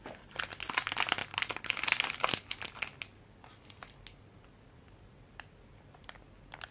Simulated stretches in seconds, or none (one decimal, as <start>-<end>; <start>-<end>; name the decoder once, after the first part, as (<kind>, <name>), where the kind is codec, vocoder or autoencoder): none